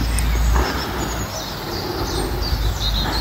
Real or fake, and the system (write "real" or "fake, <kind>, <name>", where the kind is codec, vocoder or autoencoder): real